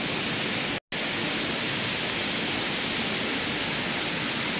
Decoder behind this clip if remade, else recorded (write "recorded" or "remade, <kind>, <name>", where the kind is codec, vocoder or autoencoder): recorded